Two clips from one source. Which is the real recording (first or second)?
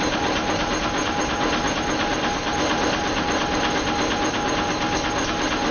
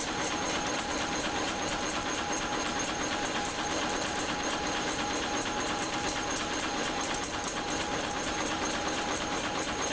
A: first